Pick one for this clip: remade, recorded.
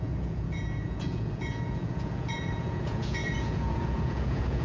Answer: remade